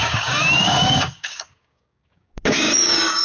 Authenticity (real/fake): fake